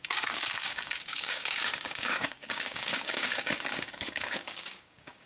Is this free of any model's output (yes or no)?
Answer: no